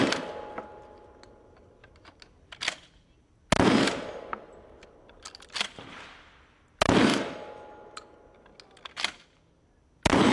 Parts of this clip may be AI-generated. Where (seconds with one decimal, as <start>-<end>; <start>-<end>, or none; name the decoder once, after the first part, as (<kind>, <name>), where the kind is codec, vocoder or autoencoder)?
none